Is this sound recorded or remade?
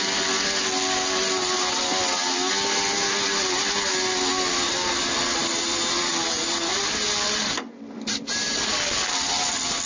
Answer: recorded